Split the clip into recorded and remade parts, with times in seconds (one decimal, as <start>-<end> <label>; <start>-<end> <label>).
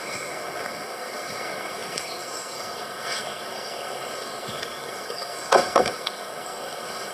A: 0.0-7.1 remade